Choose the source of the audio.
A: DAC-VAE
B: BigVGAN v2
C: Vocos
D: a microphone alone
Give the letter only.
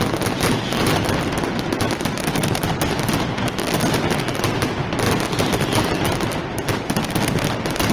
D